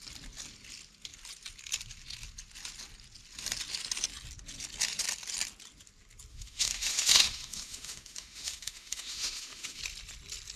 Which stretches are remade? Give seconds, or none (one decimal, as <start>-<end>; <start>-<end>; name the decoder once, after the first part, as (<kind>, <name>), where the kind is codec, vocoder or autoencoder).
6.3-9.8 (autoencoder, DAC-VAE)